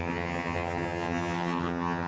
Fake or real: fake